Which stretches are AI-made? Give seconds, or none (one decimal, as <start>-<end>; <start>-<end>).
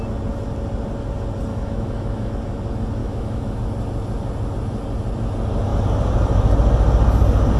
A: 1.5-2.3; 3.0-3.6